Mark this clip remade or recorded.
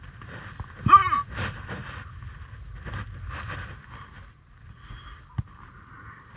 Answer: recorded